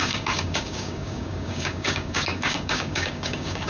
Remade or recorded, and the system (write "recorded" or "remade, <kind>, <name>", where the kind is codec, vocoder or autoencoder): remade, codec, DAC